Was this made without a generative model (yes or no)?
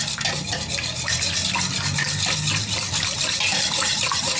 yes